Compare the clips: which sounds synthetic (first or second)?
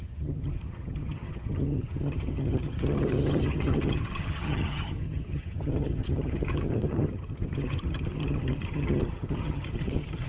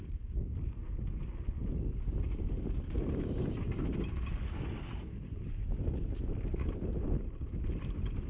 first